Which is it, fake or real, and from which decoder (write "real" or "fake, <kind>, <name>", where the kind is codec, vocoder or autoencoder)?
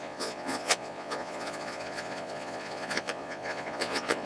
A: fake, vocoder, Vocos